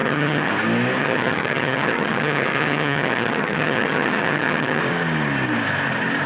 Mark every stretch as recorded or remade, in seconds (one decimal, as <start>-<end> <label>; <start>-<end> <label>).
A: 0.0-0.5 remade; 0.5-1.0 recorded; 1.0-4.8 remade; 4.8-6.3 recorded